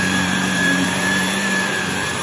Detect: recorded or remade remade